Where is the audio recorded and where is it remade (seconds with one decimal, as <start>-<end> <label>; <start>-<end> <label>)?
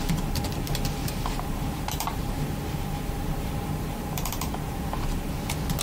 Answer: 0.0-1.0 recorded; 1.0-4.5 remade; 4.5-5.8 recorded